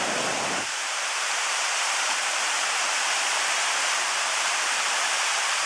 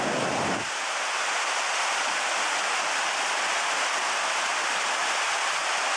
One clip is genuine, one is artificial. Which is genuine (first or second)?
second